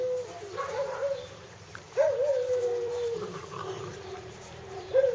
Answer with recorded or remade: remade